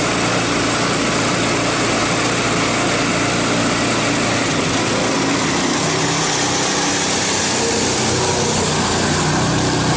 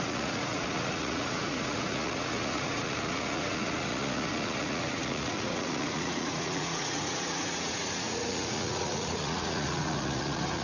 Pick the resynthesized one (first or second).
second